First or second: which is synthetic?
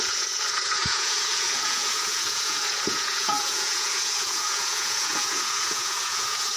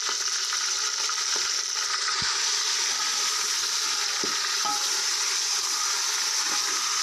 first